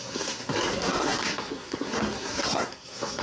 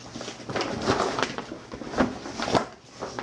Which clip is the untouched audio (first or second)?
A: second